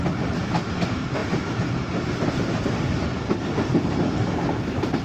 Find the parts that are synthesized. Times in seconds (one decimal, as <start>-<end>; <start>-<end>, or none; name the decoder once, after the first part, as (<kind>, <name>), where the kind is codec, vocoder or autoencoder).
none